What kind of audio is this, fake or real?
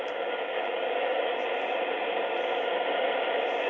real